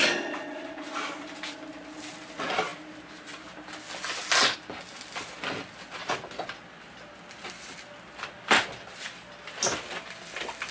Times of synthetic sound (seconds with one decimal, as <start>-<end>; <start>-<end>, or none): none